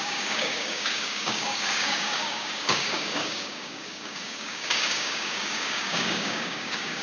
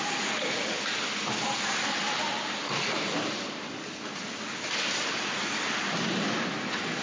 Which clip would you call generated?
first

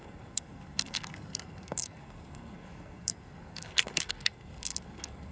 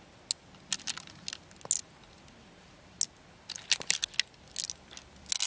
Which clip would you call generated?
first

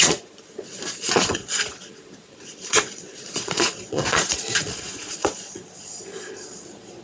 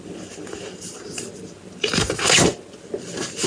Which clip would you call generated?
first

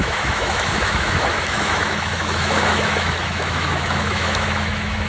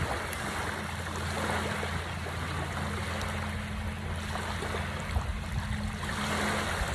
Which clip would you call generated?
first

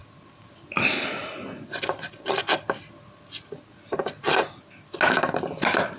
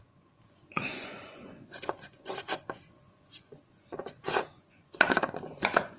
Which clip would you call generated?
second